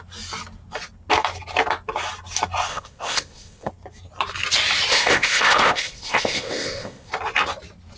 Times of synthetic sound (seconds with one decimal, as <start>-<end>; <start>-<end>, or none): 2.7-3.7; 4.9-7.1